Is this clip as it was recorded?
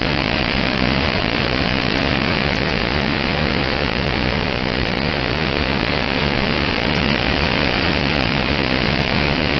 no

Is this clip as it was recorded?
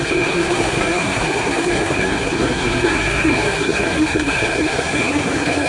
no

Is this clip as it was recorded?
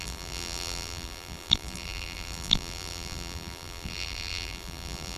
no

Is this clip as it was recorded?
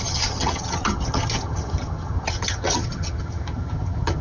no